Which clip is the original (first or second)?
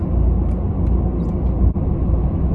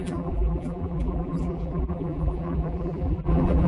first